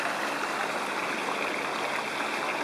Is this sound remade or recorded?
recorded